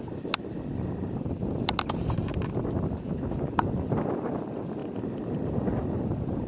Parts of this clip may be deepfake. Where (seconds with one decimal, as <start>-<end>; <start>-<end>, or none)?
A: none